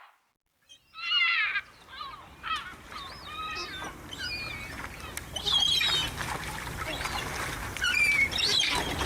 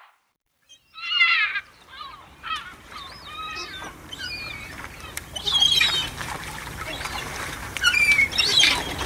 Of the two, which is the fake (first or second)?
second